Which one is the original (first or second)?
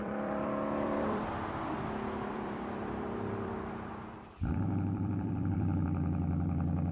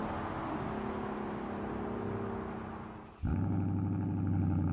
second